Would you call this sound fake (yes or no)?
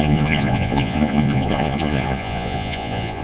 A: yes